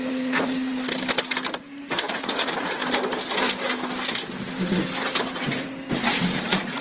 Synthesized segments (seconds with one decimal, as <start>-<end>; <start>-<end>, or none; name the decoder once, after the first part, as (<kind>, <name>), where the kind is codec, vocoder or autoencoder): 0.0-0.7 (vocoder, Vocos); 2.1-2.8; 6.0-6.8